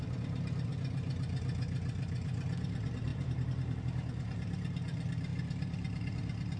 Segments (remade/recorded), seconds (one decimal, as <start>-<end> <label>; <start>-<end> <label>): 0.0-0.7 remade; 0.7-1.4 recorded; 1.4-6.6 remade